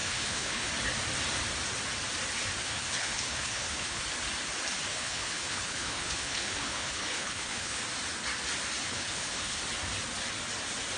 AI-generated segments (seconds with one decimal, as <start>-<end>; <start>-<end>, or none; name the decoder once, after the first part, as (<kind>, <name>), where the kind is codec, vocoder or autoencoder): 0.0-0.7 (codec, HILCodec); 2.6-4.0; 4.9-7.8; 8.8-9.6